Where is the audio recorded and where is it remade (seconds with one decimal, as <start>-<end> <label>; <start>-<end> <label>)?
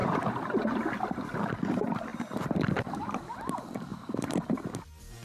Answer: 0.0-0.8 remade; 0.8-2.1 recorded; 2.1-3.2 remade; 3.2-3.9 recorded; 3.9-4.5 remade; 4.5-5.2 recorded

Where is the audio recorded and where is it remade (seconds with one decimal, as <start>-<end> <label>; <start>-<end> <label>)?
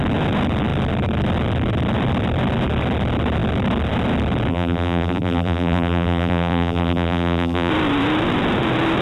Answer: 0.0-4.5 recorded; 4.5-7.7 remade; 7.7-9.0 recorded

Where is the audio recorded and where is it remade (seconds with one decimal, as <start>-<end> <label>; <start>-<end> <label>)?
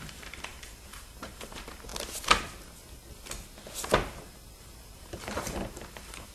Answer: 0.0-1.9 remade; 1.9-4.6 recorded; 4.6-6.3 remade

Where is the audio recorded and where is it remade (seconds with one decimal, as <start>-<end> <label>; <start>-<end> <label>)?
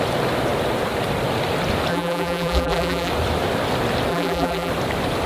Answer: 0.0-1.9 recorded; 1.9-3.1 remade; 3.1-4.1 recorded; 4.1-4.7 remade; 4.7-5.3 recorded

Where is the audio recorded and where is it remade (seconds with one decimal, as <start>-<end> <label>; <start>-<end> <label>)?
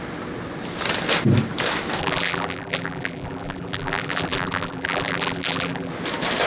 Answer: 0.0-2.0 recorded; 2.0-5.9 remade; 5.9-6.5 recorded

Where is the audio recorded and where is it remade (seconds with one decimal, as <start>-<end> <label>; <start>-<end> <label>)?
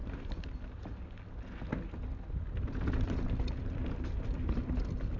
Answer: 0.0-0.8 remade; 0.8-5.2 recorded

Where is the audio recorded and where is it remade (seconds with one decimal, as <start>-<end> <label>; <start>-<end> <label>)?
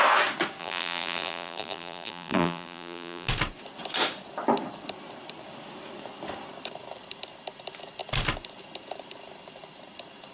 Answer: 0.0-0.6 recorded; 0.6-3.3 remade; 3.3-10.3 recorded